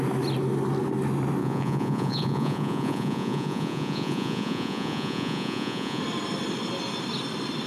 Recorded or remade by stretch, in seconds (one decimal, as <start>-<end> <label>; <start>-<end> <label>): 0.0-1.4 recorded; 1.4-6.0 remade; 6.0-7.7 recorded